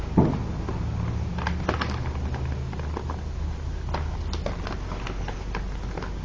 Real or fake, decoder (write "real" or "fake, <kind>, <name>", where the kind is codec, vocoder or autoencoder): real